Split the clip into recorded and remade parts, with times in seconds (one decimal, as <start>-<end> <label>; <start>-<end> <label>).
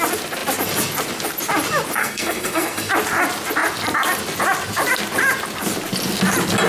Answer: 0.0-2.0 recorded; 2.0-2.9 remade; 2.9-6.7 recorded